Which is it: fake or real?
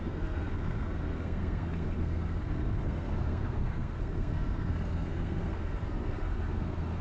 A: fake